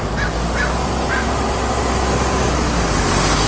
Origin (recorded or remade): recorded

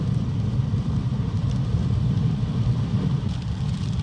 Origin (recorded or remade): remade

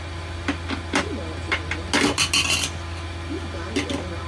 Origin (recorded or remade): recorded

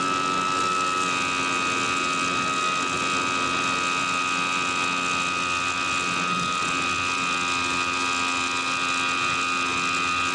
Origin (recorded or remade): recorded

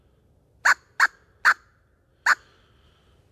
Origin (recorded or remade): recorded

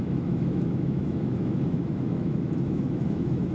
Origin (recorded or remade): remade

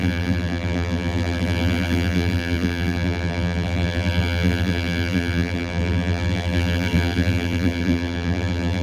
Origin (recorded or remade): remade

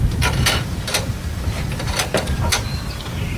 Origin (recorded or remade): remade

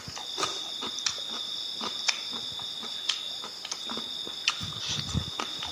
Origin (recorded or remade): recorded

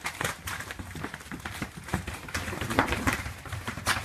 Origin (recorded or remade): remade